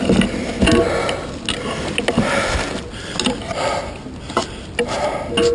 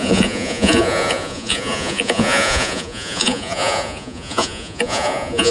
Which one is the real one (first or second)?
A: first